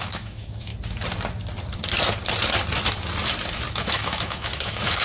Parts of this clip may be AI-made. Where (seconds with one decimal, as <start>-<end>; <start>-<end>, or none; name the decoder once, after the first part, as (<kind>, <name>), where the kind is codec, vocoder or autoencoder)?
0.0-0.7 (autoencoder, DAC-VAE); 3.7-5.0